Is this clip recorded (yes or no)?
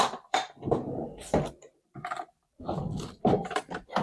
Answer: no